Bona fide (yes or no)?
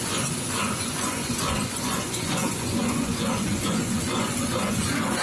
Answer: no